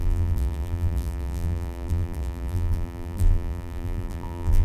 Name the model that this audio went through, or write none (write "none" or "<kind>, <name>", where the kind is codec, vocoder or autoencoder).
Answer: vocoder, BigVGAN v2